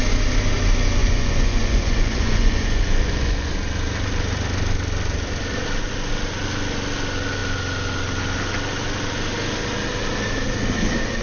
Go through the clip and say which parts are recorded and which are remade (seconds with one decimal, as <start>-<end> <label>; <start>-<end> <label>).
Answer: 0.0-1.0 recorded; 1.0-3.5 remade; 3.5-11.2 recorded